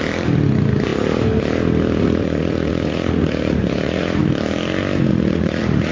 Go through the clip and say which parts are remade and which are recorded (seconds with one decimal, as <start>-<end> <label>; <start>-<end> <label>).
0.0-2.0 recorded; 2.0-4.3 remade; 4.3-5.1 recorded; 5.1-5.9 remade